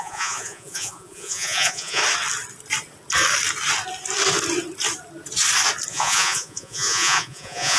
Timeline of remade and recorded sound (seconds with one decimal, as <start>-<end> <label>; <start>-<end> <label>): 0.0-2.0 remade; 2.0-5.9 recorded; 5.9-7.8 remade

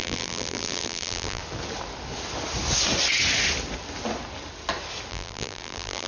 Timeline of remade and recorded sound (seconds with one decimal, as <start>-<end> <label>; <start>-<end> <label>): 0.0-1.4 remade; 1.4-5.1 recorded; 5.1-6.1 remade

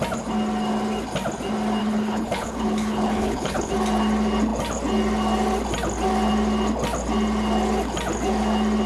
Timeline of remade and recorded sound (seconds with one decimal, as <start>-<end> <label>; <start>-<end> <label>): 0.0-1.8 recorded; 1.8-3.7 remade; 3.7-8.9 recorded

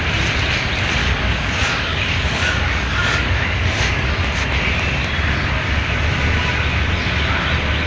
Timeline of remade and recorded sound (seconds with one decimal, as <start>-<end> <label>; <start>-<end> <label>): 0.0-1.0 recorded; 1.0-4.1 remade; 4.1-7.9 recorded

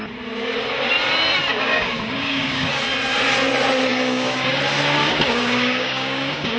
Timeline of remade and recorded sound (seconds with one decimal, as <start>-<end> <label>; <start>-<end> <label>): 0.0-1.5 recorded; 1.5-2.7 remade; 2.7-3.9 recorded; 3.9-4.6 remade; 4.6-5.0 recorded; 5.0-6.6 remade